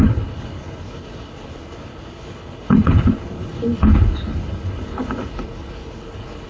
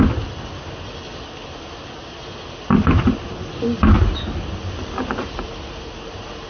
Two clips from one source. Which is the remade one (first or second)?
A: first